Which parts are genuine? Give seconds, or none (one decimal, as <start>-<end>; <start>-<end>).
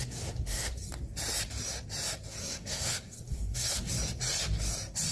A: 0.9-2.4; 3.9-5.1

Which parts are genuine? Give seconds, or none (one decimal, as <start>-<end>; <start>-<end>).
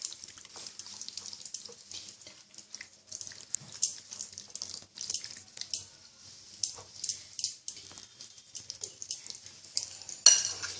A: 0.0-10.8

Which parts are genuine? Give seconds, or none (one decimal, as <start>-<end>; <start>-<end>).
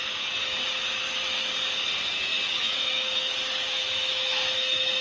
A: 1.4-2.2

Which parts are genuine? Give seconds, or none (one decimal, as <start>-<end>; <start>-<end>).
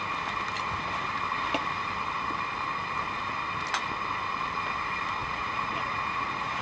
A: 0.0-5.2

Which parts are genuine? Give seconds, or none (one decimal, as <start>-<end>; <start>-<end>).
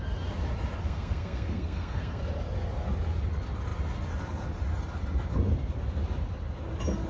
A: 0.0-0.8; 2.2-7.1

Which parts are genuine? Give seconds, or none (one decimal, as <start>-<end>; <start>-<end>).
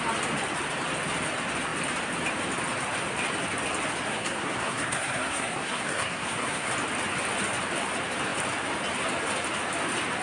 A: 0.0-4.1; 6.7-10.2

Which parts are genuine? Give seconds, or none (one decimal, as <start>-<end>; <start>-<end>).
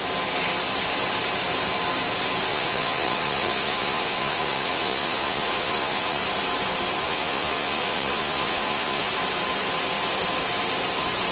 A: 0.0-2.5; 6.2-7.0; 9.1-11.3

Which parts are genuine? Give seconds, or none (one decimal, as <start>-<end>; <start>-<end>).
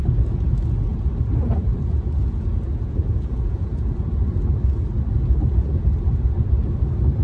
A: 0.0-1.7; 4.0-7.2